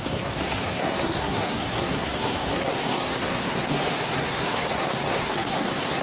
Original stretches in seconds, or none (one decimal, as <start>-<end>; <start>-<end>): none